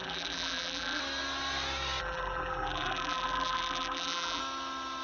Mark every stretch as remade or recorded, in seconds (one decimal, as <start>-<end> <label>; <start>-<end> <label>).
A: 0.0-1.0 remade; 1.0-2.0 recorded; 2.0-4.4 remade; 4.4-5.0 recorded